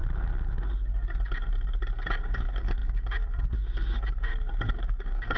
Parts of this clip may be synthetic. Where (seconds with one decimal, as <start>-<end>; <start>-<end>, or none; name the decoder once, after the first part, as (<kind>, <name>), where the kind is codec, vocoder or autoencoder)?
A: 2.1-4.3 (codec, DAC); 4.8-5.4